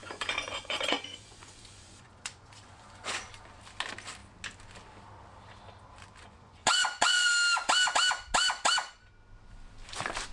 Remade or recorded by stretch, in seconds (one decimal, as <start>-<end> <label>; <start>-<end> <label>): 0.0-3.3 remade; 3.3-6.2 recorded; 6.2-7.3 remade; 7.3-10.3 recorded